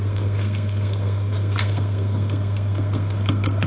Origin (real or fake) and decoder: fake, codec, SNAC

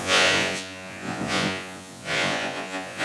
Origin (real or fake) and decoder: fake, vocoder, Vocos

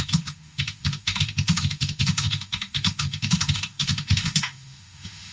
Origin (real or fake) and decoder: fake, autoencoder, DAC-VAE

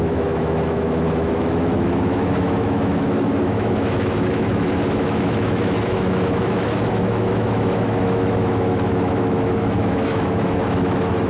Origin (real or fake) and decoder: fake, autoencoder, DAC-VAE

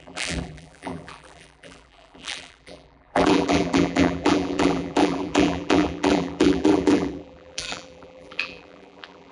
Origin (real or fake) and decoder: fake, vocoder, BigVGAN v2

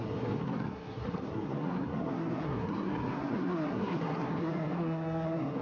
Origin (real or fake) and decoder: fake, codec, SNAC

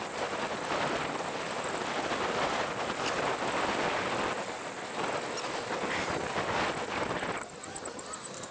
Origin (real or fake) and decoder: real